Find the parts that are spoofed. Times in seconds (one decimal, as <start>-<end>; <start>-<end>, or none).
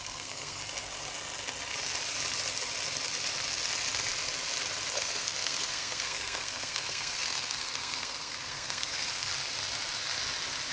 0.0-0.6; 4.9-9.3